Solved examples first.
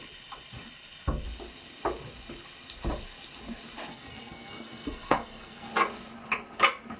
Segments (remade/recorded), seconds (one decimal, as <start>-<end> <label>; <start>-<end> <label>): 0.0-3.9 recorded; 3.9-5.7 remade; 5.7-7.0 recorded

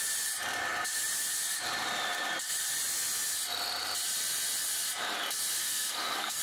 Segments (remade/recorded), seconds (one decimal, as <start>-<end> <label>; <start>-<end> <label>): 0.0-5.6 recorded; 5.6-6.4 remade

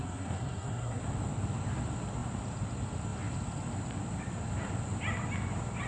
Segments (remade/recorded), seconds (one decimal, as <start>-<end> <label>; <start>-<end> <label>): 0.0-1.0 remade; 1.0-5.9 recorded

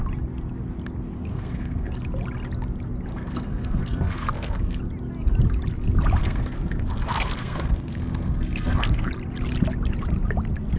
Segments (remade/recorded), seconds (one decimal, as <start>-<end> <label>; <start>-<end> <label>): 0.0-1.3 recorded; 1.3-1.9 remade; 1.9-3.1 recorded; 3.1-4.8 remade; 4.8-6.2 recorded; 6.2-9.1 remade; 9.1-10.8 recorded

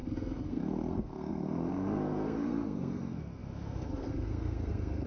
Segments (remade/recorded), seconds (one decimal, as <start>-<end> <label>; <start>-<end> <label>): 0.0-5.1 remade

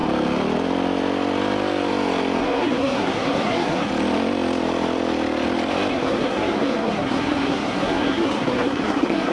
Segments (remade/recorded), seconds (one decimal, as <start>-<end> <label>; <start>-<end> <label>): 0.0-2.4 recorded; 2.4-3.9 remade; 3.9-5.9 recorded; 5.9-9.3 remade

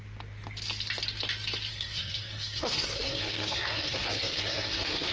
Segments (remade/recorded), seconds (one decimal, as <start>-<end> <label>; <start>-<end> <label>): 0.0-1.7 recorded; 1.7-5.1 remade